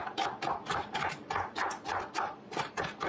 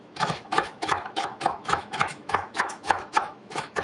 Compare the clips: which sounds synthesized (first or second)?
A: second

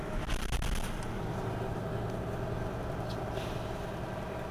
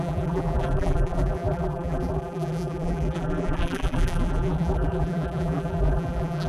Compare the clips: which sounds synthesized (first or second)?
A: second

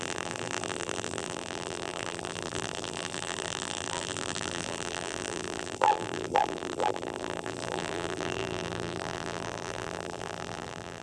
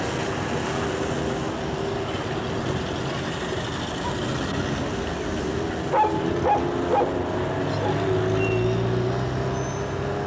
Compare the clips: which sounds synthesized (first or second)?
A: first